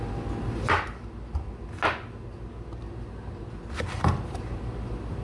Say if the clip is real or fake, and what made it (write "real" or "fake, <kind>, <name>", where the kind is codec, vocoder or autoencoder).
real